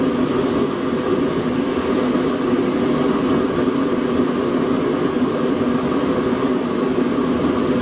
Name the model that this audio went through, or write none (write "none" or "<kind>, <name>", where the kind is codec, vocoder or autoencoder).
none